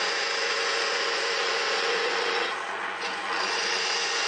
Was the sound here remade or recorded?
remade